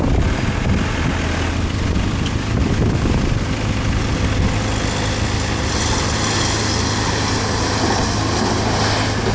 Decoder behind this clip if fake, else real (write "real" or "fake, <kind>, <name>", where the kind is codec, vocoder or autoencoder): real